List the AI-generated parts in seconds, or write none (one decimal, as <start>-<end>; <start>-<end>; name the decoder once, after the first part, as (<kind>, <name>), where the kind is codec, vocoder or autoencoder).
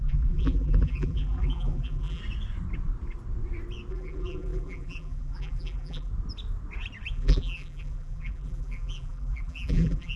0.0-2.2 (vocoder, BigVGAN v2); 3.9-6.1; 7.1-10.2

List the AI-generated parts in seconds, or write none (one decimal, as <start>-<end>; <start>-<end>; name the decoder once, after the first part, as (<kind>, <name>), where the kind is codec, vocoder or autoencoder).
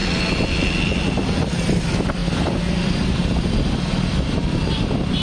none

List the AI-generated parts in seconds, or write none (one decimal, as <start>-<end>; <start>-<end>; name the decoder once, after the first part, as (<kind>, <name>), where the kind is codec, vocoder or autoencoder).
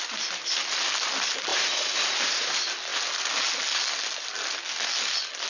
1.5-2.2 (vocoder, BigVGAN v2); 2.9-3.5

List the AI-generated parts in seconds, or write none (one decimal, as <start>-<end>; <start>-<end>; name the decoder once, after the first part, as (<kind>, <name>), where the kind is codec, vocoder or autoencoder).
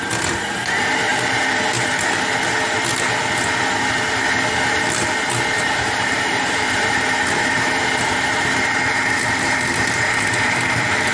0.0-1.1 (vocoder, BigVGAN v2); 5.5-11.1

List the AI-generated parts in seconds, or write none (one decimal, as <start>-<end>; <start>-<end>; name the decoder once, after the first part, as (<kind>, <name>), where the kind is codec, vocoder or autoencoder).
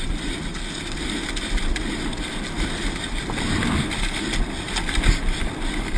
none